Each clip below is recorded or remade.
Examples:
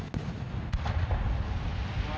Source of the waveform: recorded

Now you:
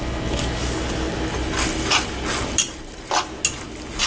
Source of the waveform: recorded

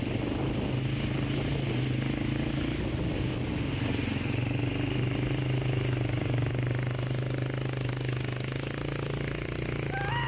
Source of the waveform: recorded